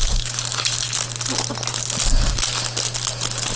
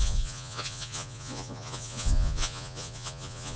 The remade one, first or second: second